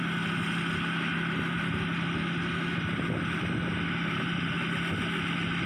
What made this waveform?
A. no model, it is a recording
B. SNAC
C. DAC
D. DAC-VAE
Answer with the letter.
A